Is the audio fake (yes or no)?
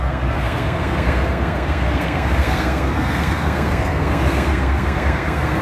yes